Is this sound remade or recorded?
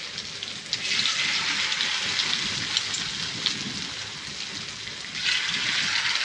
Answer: recorded